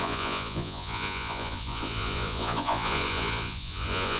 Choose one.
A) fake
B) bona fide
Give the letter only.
A